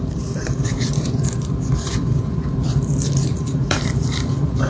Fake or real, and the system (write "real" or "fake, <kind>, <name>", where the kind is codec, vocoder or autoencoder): fake, vocoder, BigVGAN v2